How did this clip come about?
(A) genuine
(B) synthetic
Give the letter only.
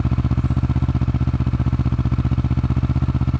A